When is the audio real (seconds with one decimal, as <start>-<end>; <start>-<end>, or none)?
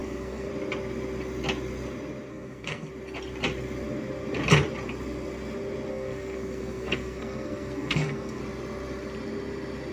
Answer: 0.5-2.3; 2.9-5.9; 8.4-9.9